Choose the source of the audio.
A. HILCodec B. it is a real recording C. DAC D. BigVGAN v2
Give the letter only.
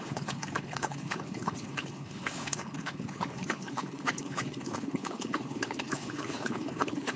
A